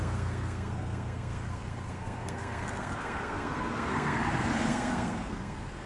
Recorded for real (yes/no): no